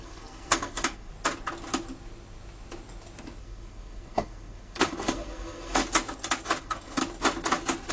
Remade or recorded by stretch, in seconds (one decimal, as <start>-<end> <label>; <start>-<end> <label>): 0.0-1.1 remade; 1.1-3.4 recorded; 3.4-5.8 remade; 5.8-6.6 recorded; 6.6-7.0 remade; 7.0-7.9 recorded

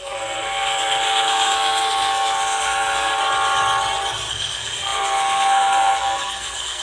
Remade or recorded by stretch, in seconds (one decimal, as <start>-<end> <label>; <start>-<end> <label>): 0.0-3.2 remade; 3.2-4.3 recorded; 4.3-6.8 remade

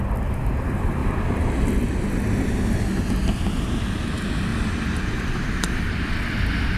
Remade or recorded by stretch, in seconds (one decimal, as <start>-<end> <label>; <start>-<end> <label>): 0.0-1.0 recorded; 1.0-1.7 remade; 1.7-4.5 recorded; 4.5-5.9 remade; 5.9-6.8 recorded